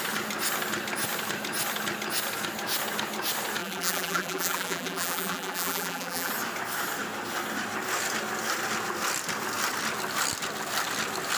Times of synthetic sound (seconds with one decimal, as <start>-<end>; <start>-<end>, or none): 3.6-6.3